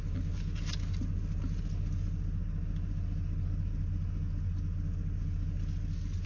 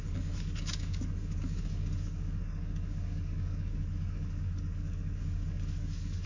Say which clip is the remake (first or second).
second